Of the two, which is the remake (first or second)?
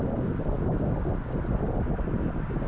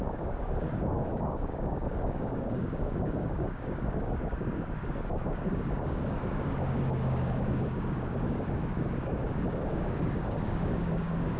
second